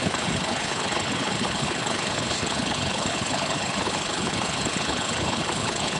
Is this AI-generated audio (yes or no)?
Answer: yes